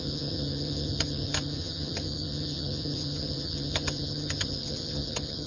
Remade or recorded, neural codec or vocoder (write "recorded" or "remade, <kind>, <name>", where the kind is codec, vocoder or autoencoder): remade, vocoder, HiFi-GAN